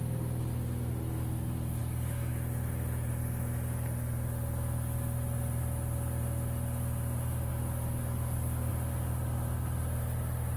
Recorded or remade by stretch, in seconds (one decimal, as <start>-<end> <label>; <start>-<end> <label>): 0.0-1.8 recorded; 1.8-2.3 remade; 2.3-7.5 recorded; 7.5-8.7 remade; 8.7-10.6 recorded